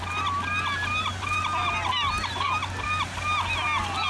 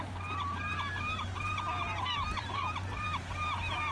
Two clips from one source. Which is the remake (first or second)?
second